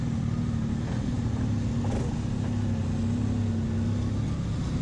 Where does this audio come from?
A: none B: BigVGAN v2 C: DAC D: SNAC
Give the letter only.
A